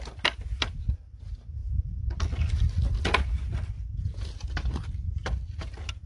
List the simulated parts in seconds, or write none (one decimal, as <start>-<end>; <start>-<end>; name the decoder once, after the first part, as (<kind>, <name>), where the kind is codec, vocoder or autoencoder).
none